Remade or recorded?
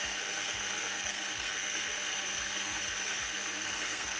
remade